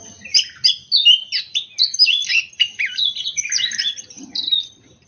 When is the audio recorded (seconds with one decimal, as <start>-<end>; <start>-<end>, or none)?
0.0-2.2